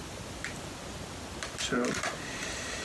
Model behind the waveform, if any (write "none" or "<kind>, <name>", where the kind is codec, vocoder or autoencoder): none